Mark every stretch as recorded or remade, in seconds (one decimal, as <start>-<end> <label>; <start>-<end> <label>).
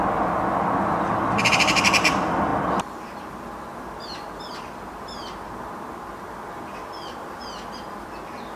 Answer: 0.0-8.6 recorded